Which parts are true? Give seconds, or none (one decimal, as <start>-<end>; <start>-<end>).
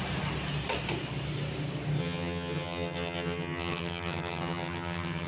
0.0-2.0